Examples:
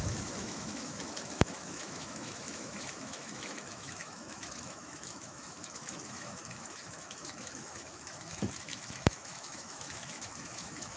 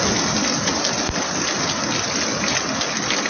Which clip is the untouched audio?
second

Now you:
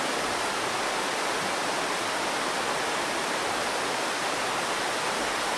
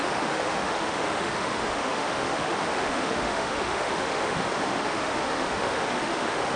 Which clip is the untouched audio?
first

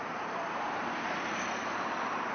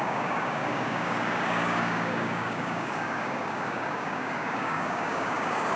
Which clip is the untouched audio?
first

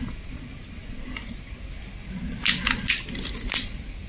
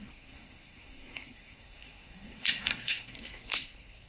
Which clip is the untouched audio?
first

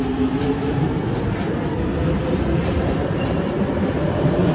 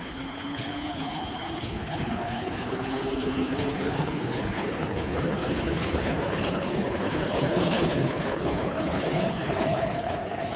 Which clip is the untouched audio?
first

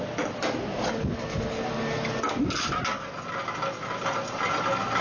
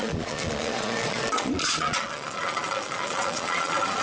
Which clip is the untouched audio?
first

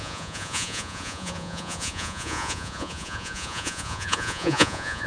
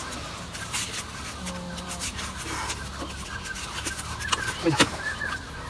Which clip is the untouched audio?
second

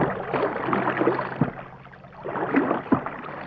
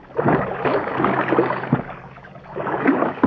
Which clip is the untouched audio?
first